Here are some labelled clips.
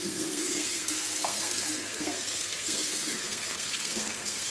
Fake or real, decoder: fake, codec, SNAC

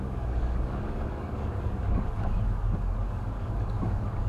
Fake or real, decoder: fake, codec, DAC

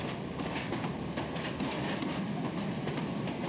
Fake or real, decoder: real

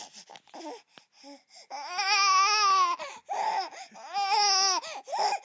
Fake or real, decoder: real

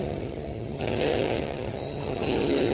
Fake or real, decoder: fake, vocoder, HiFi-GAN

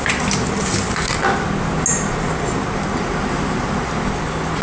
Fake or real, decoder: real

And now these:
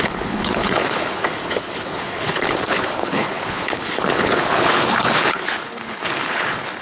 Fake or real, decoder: fake, codec, HILCodec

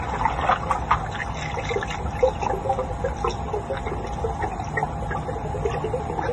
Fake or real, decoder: real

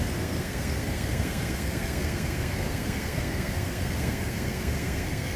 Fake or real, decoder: fake, codec, SNAC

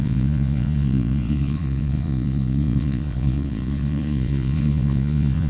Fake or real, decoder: fake, vocoder, Vocos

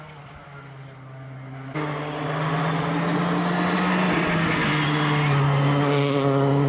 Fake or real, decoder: real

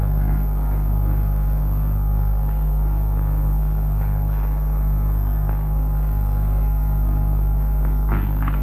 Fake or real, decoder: fake, codec, SNAC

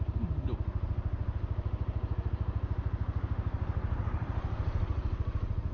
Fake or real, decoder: real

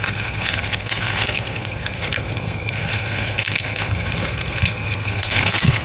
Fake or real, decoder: fake, codec, SNAC